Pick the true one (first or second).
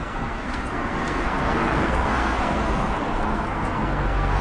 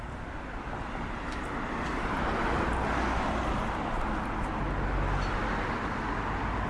second